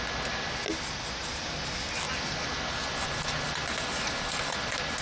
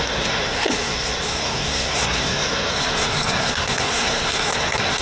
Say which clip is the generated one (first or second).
second